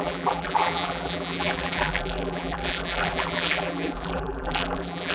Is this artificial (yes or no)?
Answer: yes